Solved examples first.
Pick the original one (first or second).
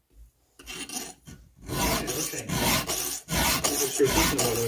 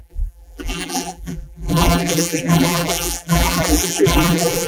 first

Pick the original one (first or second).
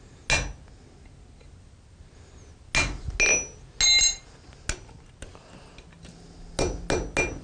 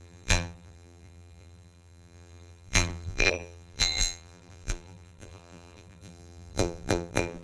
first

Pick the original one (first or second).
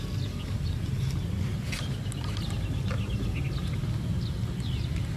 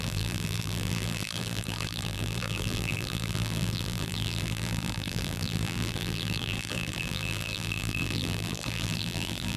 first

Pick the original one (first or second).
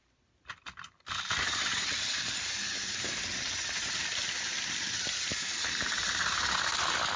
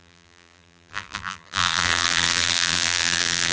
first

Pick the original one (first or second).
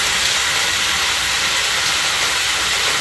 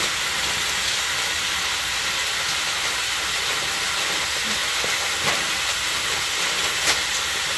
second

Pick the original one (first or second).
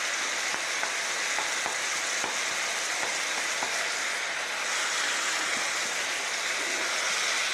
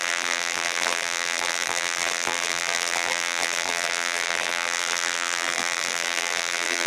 first